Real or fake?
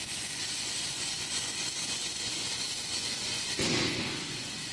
fake